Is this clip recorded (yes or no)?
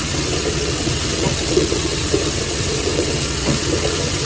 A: no